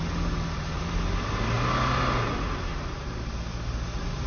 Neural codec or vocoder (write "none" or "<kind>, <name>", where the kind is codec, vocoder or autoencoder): none